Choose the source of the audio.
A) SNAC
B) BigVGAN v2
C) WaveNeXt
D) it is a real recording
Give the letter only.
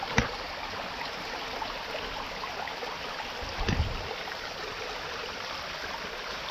D